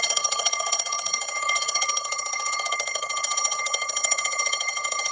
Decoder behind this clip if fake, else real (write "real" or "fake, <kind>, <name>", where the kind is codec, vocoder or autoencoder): fake, vocoder, HiFi-GAN